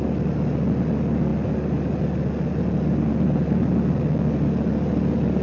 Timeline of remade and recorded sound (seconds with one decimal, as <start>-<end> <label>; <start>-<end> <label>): 0.0-5.4 recorded